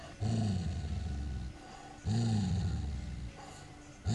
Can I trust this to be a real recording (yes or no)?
yes